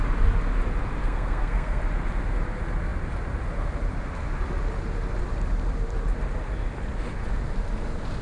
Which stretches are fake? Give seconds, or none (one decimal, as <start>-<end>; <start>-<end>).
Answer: 1.0-1.8